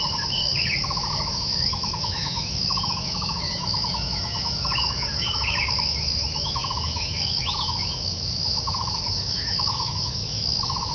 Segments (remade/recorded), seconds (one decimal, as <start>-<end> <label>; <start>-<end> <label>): 0.0-10.9 remade